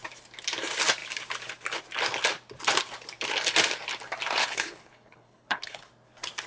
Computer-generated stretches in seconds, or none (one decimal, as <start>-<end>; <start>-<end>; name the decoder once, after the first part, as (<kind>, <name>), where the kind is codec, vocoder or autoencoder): 4.4-5.9 (codec, HILCodec)